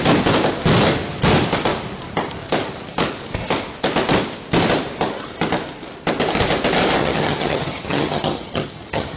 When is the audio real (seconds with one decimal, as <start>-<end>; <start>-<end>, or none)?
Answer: 0.0-7.0